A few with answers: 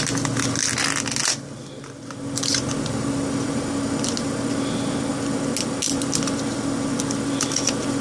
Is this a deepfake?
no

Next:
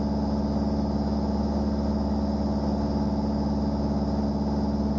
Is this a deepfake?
no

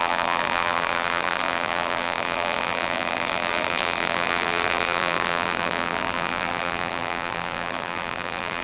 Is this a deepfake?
yes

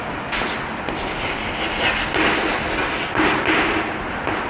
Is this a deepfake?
no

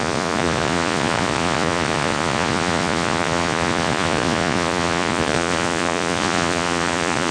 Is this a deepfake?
yes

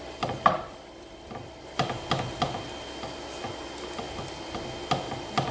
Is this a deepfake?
no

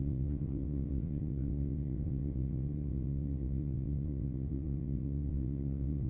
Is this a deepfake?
yes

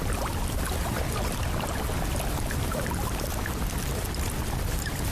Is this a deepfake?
yes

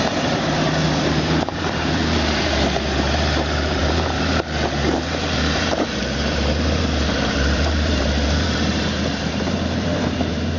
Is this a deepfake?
yes